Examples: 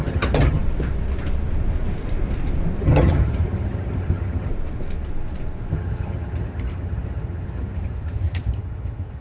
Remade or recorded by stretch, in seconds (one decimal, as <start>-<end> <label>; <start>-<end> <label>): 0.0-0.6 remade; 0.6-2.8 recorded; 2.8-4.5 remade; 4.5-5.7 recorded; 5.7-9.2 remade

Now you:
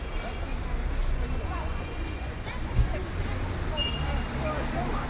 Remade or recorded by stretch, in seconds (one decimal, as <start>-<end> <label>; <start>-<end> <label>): 0.0-1.0 recorded; 1.0-3.1 remade; 3.1-5.1 recorded

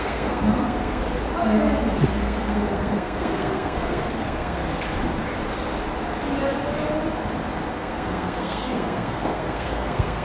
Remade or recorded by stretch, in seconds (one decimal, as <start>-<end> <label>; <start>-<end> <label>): 0.0-1.0 remade; 1.0-2.1 recorded; 2.1-4.6 remade; 4.6-7.7 recorded; 7.7-10.2 remade

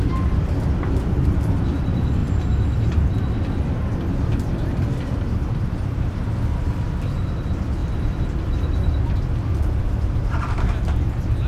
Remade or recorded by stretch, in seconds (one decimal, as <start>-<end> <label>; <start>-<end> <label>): 0.0-7.8 recorded; 7.8-9.1 remade; 9.1-11.5 recorded

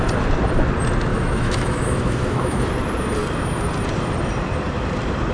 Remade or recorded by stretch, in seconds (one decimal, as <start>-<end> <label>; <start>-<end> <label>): 0.0-1.1 recorded; 1.1-2.7 remade; 2.7-5.3 recorded

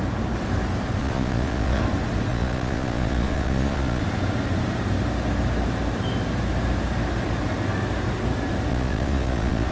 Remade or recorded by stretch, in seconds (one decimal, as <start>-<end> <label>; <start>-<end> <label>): 0.0-1.0 recorded; 1.0-1.8 remade; 1.8-2.3 recorded; 2.3-4.0 remade; 4.0-8.7 recorded; 8.7-9.7 remade

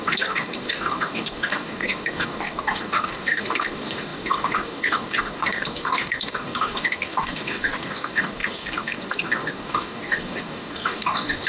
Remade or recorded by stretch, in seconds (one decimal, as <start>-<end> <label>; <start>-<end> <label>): 0.0-11.5 remade

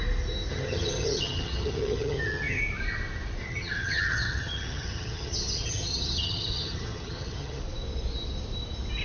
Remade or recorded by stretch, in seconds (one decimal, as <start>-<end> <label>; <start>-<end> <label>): 0.0-0.5 recorded; 0.5-2.6 remade; 2.6-3.4 recorded; 3.4-7.6 remade; 7.6-9.0 recorded